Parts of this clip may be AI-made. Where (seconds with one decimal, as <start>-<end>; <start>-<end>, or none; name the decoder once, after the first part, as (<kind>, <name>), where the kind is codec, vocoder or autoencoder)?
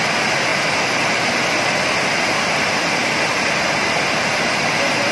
0.5-1.8 (vocoder, BigVGAN v2)